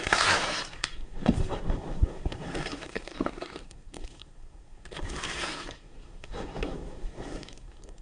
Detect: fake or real fake